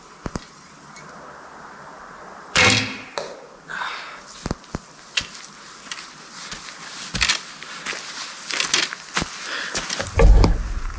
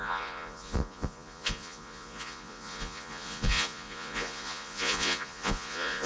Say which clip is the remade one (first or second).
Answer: second